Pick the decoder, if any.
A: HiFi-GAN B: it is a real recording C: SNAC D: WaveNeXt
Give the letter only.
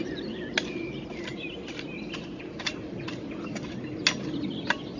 B